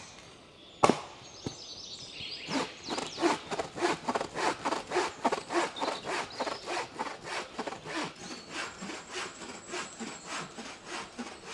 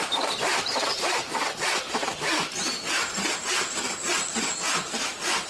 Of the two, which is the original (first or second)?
first